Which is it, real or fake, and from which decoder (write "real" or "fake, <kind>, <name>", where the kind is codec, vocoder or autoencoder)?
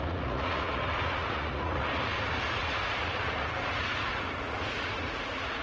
fake, vocoder, Vocos